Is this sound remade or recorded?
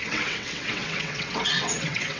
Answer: remade